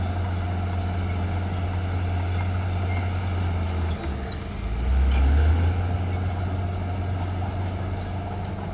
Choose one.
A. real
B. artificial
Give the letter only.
A